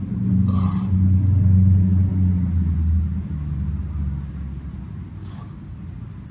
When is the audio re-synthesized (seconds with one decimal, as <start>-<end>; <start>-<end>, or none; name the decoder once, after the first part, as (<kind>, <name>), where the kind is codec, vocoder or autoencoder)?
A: 5.2-5.8 (codec, DAC)